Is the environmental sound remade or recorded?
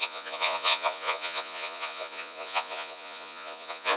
remade